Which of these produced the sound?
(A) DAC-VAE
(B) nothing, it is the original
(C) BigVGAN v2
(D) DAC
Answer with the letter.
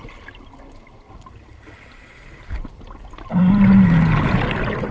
B